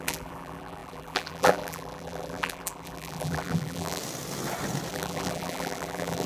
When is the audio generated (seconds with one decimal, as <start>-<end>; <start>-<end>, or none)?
0.0-4.0; 4.9-6.3